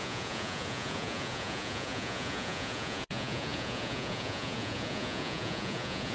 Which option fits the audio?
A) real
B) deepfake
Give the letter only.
B